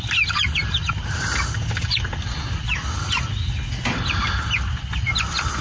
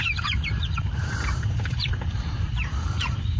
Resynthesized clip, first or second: second